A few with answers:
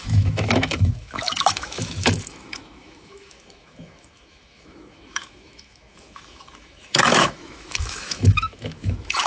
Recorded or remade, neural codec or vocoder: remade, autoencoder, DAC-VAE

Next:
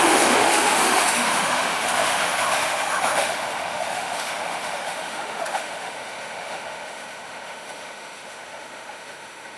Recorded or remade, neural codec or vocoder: remade, autoencoder, DAC-VAE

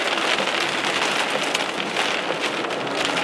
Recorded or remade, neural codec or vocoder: recorded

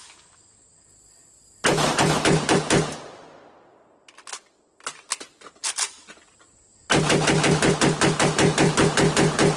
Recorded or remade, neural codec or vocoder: recorded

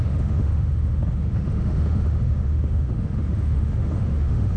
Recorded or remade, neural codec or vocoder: remade, autoencoder, DAC-VAE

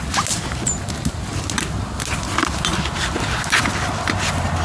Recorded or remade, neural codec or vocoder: recorded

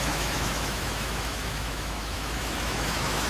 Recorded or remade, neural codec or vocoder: remade, autoencoder, DAC-VAE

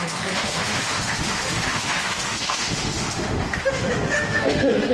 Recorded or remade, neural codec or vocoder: remade, autoencoder, DAC-VAE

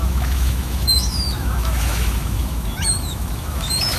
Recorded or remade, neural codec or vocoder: remade, autoencoder, DAC-VAE